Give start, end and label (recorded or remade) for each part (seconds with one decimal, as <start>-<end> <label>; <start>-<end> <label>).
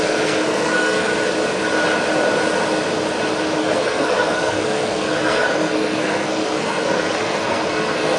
0.0-1.1 remade; 1.1-3.6 recorded; 3.6-8.2 remade